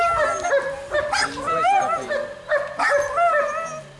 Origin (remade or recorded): recorded